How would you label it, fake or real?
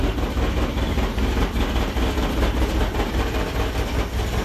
real